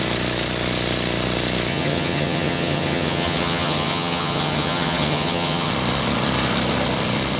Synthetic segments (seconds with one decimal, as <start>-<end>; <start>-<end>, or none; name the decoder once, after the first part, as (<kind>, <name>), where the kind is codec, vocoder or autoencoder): 1.7-5.7 (vocoder, HiFi-GAN)